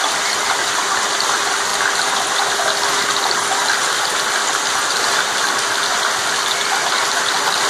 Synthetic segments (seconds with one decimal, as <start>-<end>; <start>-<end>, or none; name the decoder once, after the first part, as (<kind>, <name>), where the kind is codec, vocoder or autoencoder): none